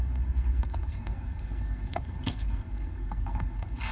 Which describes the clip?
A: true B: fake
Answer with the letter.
B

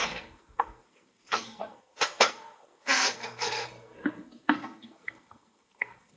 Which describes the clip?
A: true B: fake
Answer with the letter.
B